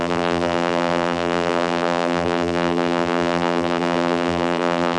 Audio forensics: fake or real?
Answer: fake